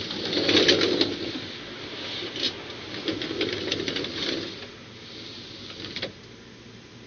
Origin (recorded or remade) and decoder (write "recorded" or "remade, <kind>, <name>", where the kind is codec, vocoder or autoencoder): recorded